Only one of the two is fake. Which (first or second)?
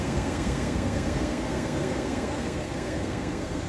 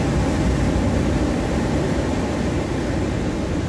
first